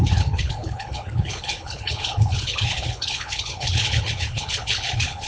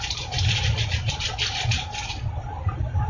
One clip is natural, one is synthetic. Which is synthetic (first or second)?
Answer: first